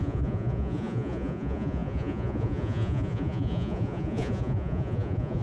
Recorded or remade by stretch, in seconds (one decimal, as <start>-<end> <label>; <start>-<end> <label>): 0.0-5.4 remade